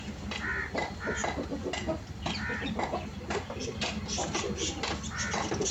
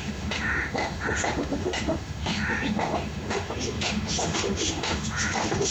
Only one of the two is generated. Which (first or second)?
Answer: second